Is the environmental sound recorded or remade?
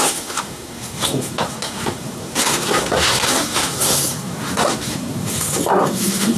remade